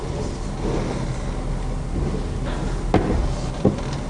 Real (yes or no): yes